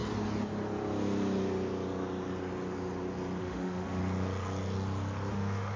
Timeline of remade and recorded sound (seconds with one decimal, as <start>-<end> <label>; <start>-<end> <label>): 0.0-3.4 recorded; 3.4-4.0 remade; 4.0-5.3 recorded; 5.3-5.8 remade